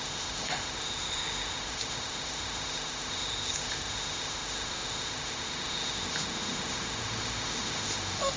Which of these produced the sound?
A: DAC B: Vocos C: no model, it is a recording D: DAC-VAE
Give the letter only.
D